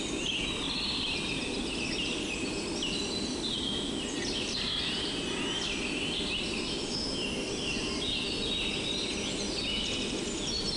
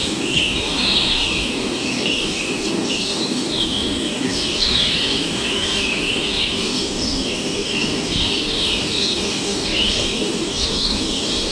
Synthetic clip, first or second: second